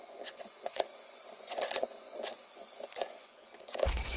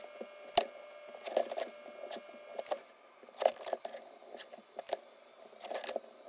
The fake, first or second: first